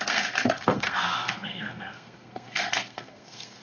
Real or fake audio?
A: fake